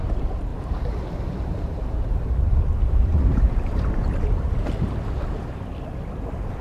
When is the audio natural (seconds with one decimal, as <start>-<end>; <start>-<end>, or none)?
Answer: 0.0-0.5; 4.5-6.6